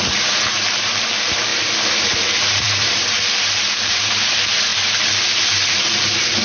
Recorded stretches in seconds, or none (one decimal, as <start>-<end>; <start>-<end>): 4.7-5.7